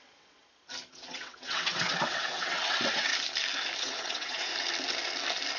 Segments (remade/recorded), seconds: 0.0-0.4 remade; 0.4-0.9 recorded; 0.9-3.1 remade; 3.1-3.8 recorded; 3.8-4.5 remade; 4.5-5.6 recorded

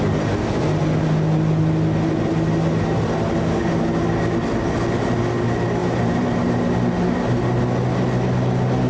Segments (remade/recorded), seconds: 0.0-5.8 recorded; 5.8-6.6 remade; 6.6-8.9 recorded